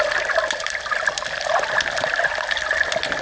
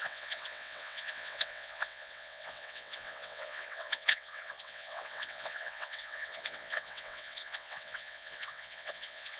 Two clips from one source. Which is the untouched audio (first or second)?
first